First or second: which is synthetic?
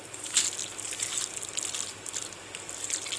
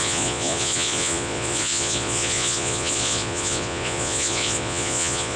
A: second